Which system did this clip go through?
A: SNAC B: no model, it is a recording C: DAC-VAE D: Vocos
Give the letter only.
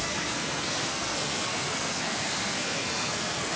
A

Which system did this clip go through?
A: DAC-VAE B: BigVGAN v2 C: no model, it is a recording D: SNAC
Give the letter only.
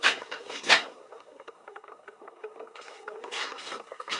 D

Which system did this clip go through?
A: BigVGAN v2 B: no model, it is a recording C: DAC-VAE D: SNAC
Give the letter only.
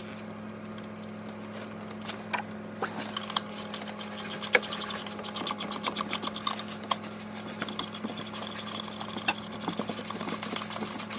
B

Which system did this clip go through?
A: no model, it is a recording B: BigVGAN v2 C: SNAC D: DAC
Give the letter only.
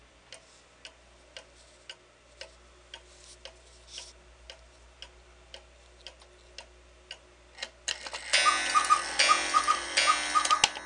A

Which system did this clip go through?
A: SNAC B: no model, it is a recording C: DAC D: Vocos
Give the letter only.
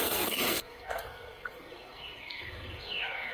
A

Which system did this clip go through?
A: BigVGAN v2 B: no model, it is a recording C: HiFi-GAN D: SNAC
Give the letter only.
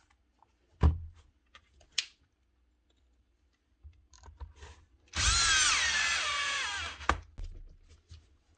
B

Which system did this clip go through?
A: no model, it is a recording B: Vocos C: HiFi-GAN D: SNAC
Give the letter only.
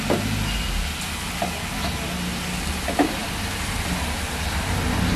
A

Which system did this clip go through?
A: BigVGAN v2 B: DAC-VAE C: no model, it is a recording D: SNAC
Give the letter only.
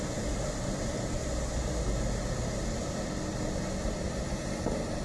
C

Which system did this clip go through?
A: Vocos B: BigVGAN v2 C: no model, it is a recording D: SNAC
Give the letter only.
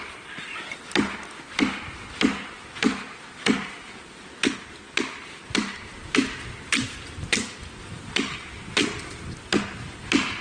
C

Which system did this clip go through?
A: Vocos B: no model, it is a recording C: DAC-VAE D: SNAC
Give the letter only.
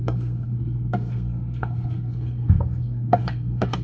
D